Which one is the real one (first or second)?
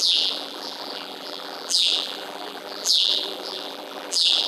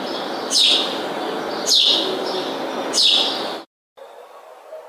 second